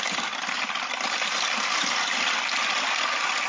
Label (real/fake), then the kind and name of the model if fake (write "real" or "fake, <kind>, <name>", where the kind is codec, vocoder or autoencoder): real